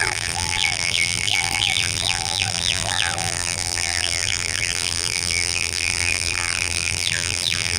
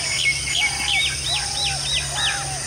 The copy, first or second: first